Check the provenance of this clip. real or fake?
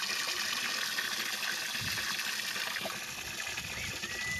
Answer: real